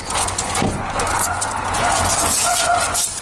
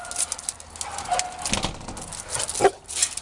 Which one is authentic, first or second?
second